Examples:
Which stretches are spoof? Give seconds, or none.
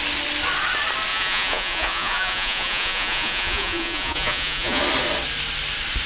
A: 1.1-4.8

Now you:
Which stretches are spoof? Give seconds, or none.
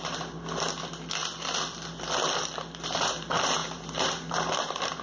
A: 1.2-3.1; 3.6-4.3